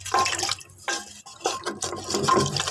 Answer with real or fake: real